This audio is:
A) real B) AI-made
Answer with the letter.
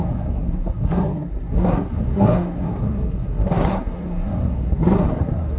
B